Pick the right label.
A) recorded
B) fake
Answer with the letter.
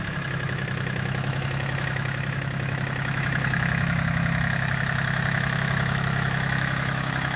B